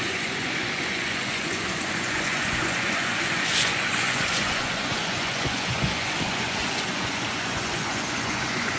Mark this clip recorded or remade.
remade